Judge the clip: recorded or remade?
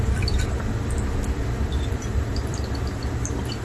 remade